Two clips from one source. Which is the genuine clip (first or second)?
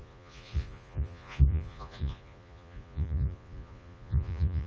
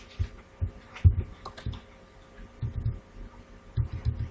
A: second